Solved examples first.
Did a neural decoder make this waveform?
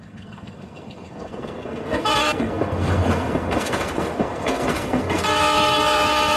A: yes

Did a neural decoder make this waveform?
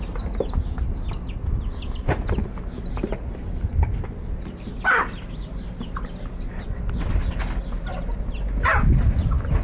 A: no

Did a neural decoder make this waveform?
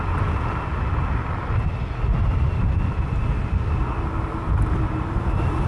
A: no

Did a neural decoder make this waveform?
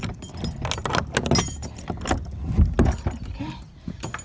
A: no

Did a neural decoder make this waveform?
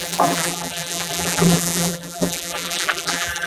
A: yes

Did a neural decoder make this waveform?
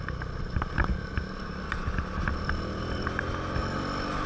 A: no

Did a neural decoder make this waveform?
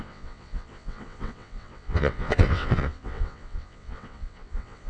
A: yes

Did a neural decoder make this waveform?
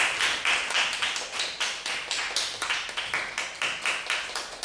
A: no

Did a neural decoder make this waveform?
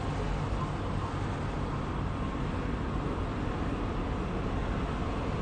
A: no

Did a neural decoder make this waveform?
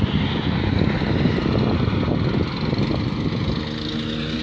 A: no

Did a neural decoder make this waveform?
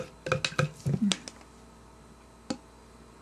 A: no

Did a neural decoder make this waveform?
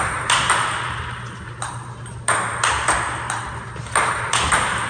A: yes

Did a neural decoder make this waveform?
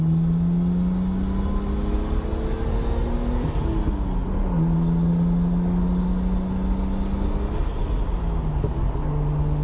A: no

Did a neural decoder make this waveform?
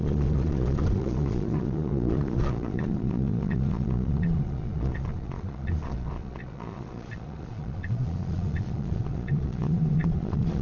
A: yes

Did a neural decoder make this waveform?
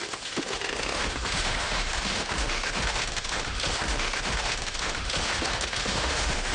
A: yes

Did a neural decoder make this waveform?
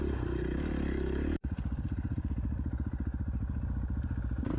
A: no